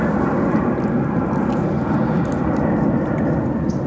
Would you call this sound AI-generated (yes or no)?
no